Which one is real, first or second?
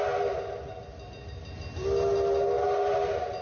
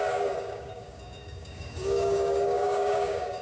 first